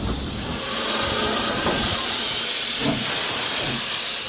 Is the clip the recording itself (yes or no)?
yes